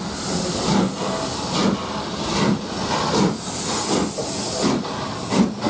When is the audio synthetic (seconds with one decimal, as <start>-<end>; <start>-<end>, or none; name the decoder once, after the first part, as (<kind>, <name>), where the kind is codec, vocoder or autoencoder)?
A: none